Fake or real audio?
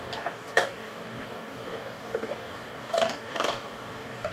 fake